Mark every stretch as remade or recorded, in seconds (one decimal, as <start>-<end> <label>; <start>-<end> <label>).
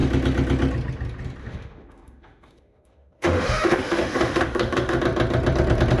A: 0.0-1.4 recorded; 1.4-5.0 remade; 5.0-6.0 recorded